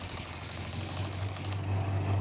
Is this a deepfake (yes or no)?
yes